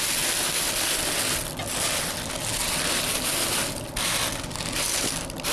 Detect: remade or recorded recorded